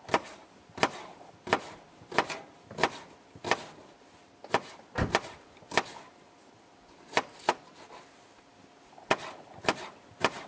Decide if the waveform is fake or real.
real